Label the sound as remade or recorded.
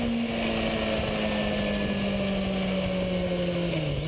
recorded